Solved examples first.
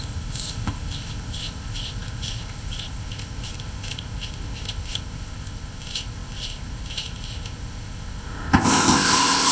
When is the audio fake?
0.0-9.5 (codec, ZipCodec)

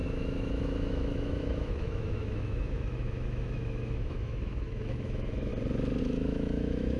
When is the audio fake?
0.0-5.5 (autoencoder, DAC-VAE); 6.0-7.0

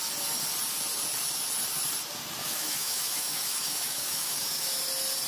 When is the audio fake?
2.4-4.8 (autoencoder, DAC-VAE)